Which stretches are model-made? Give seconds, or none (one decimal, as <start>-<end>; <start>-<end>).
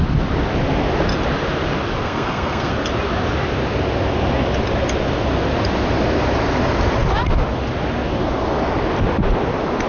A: 2.0-2.7